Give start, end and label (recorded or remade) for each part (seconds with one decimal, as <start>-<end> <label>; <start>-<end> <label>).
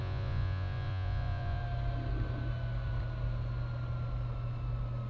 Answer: 0.0-1.6 remade; 1.6-5.1 recorded